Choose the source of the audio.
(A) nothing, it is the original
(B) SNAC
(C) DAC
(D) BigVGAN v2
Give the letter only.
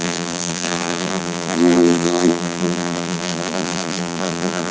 D